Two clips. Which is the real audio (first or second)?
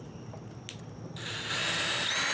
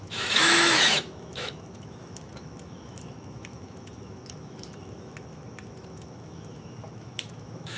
first